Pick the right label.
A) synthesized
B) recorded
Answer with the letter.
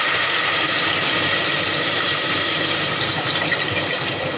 A